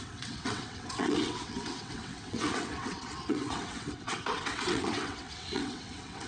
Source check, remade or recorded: remade